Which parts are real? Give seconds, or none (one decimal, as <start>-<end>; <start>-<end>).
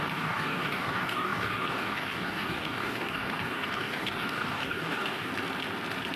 5.3-6.2